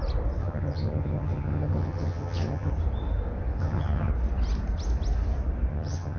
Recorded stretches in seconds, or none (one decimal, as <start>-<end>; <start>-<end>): 0.0-0.4; 2.7-3.6; 4.1-5.7